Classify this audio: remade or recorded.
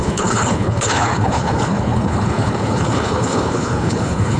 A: remade